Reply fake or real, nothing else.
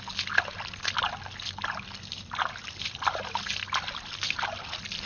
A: real